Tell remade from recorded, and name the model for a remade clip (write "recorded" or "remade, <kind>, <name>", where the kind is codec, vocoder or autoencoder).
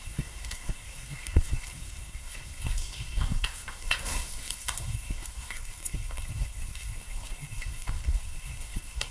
remade, codec, SNAC